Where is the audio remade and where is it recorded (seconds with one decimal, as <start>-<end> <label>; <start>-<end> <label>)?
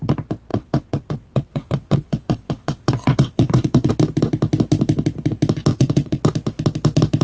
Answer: 0.0-0.5 recorded; 0.5-3.9 remade; 3.9-5.7 recorded; 5.7-6.2 remade; 6.2-7.2 recorded